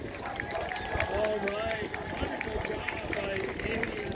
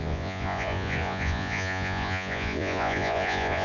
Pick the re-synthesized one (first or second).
second